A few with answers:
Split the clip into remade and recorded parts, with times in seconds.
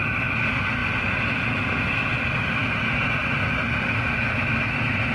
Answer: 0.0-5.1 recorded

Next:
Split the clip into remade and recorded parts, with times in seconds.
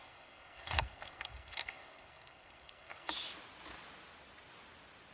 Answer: 0.0-3.1 remade; 3.1-5.1 recorded